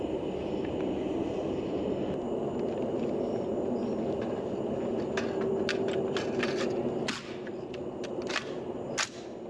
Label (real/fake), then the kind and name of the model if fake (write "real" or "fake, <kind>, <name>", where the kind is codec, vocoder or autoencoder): real